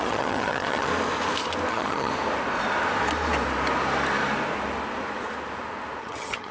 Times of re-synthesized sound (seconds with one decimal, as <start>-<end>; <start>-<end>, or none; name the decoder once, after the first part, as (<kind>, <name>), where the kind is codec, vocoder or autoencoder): 0.0-0.9 (vocoder, HiFi-GAN); 1.7-2.1; 6.0-6.5